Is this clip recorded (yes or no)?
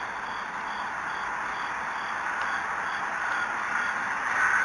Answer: yes